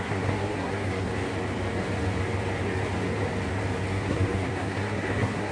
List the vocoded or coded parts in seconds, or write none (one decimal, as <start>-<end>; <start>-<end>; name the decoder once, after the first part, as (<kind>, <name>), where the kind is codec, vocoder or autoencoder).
0.0-1.1 (codec, SNAC); 3.9-5.5